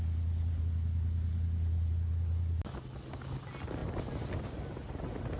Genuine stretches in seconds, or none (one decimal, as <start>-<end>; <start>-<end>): 0.0-5.4